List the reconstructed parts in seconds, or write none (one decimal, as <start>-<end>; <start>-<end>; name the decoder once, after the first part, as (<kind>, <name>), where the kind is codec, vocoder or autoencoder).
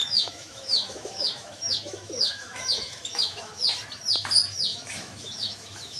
0.0-3.6 (autoencoder, DAC-VAE); 4.7-6.0